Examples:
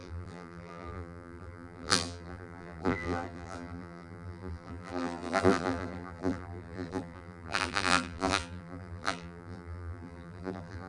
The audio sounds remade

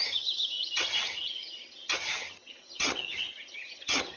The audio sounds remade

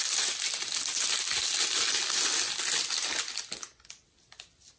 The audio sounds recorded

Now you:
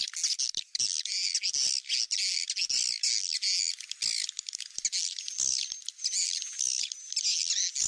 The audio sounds recorded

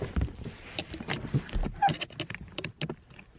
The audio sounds recorded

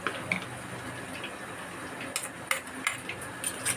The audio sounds recorded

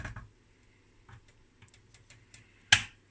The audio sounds recorded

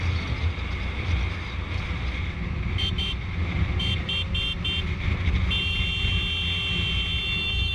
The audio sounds recorded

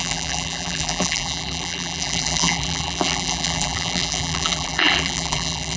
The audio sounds remade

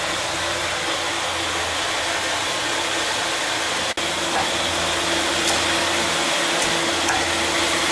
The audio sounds recorded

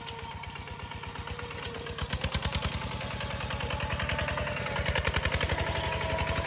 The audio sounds recorded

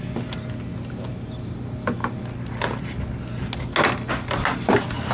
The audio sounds recorded